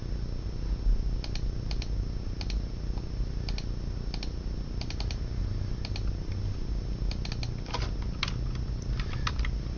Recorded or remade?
recorded